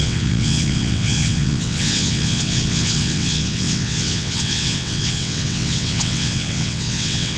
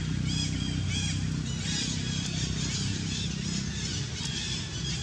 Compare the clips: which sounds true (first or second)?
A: second